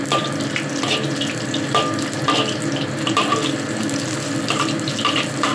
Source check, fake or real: fake